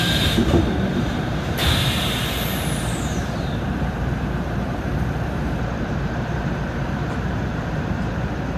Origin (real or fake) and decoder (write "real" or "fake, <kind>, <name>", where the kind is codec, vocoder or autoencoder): fake, vocoder, BigVGAN v2